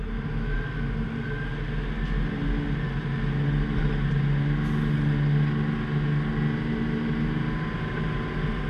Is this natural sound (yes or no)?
yes